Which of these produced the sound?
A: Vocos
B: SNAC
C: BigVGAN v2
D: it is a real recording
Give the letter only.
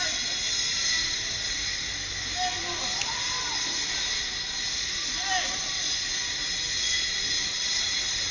D